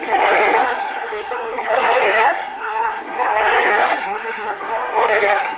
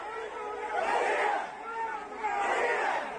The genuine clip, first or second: second